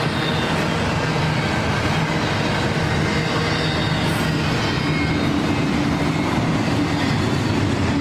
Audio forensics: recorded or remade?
recorded